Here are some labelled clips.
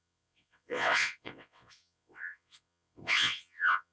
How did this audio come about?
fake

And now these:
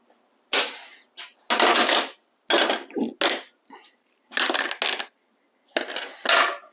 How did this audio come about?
real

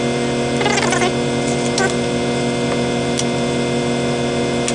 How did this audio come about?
real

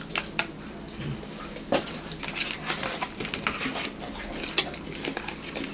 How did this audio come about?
real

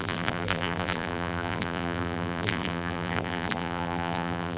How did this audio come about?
fake